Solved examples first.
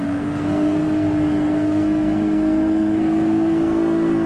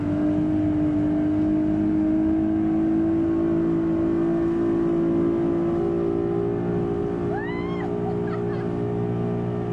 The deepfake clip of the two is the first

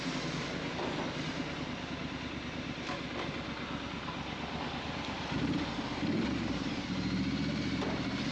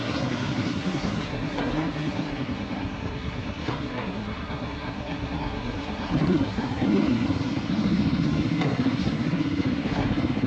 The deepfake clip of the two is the second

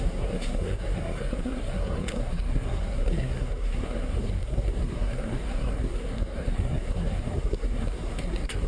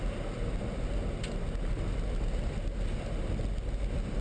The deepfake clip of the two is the first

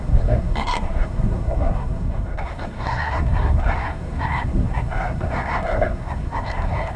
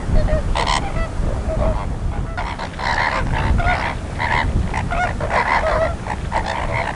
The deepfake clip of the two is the first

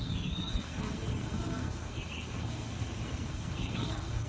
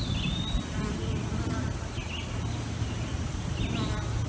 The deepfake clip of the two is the first